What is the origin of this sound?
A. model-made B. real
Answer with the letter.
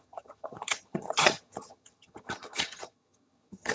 A